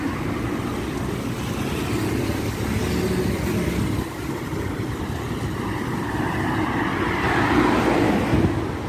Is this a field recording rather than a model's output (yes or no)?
yes